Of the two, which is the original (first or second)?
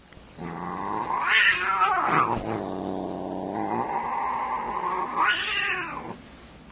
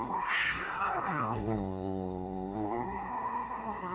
first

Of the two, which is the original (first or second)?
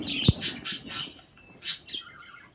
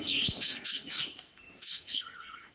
first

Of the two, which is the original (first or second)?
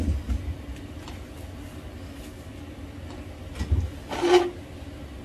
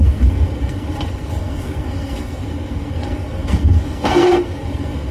first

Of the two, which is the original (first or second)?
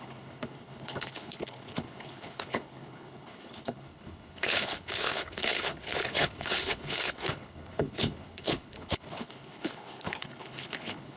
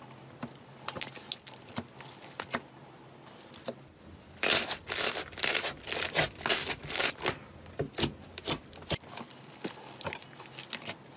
second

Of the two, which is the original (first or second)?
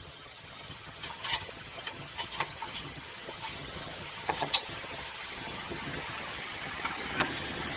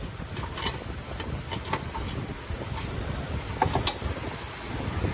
second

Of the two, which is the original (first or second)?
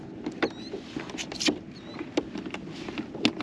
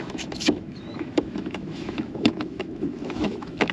first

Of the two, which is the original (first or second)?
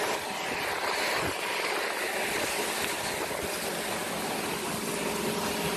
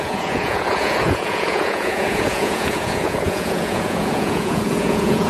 first